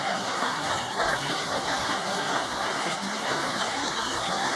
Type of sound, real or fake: fake